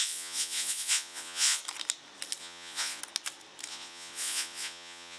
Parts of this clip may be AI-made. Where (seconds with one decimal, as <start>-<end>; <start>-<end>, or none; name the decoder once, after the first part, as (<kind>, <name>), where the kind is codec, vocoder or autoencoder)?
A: 0.0-1.6 (vocoder, Vocos); 2.4-3.0; 3.7-5.2